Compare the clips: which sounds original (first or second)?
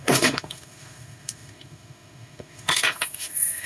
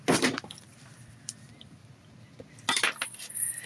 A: second